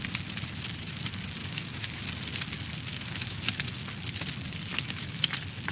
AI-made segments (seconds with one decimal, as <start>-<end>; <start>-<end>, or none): 1.4-2.0; 2.9-3.7; 4.7-5.3